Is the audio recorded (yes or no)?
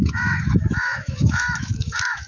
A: no